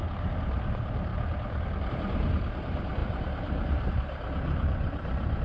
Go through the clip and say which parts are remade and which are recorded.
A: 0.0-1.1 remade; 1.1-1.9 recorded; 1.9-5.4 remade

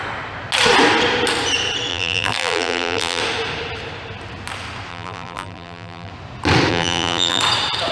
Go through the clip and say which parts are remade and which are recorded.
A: 0.0-1.9 recorded; 1.9-3.2 remade; 3.2-4.9 recorded; 4.9-6.1 remade; 6.1-6.7 recorded; 6.7-7.4 remade; 7.4-7.9 recorded

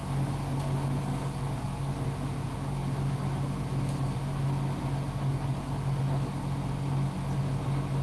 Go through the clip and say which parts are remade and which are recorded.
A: 0.0-8.0 recorded

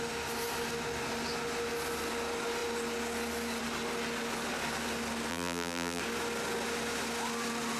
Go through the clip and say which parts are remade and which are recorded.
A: 0.0-5.3 recorded; 5.3-6.0 remade; 6.0-7.8 recorded

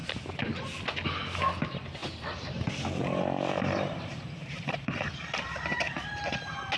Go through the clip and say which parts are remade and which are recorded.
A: 0.0-0.6 remade; 0.6-2.0 recorded; 2.0-6.1 remade; 6.1-6.8 recorded

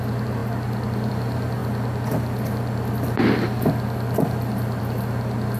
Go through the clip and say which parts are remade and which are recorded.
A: 0.0-0.4 recorded; 0.4-1.1 remade; 1.1-1.6 recorded; 1.6-4.8 remade; 4.8-5.6 recorded